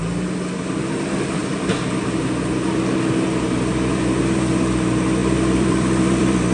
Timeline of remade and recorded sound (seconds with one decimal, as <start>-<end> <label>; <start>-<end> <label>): 0.0-5.2 recorded; 5.2-6.5 remade